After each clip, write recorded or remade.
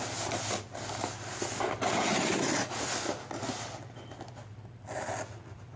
recorded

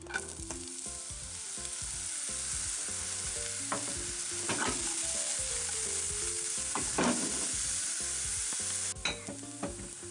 recorded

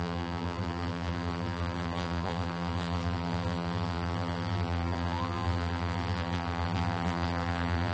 remade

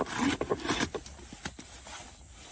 recorded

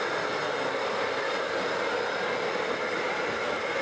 recorded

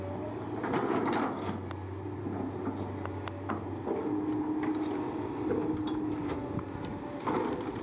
recorded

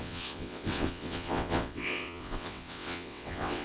remade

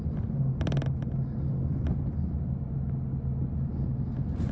recorded